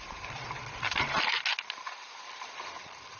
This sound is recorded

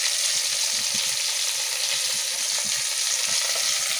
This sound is recorded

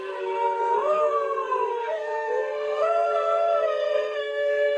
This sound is remade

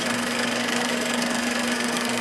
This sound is remade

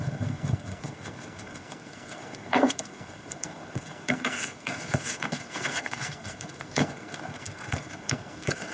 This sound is remade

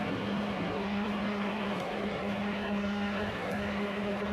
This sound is remade